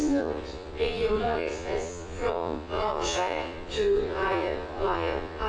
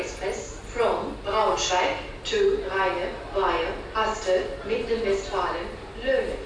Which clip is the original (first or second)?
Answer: second